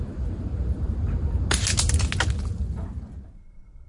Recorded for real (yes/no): yes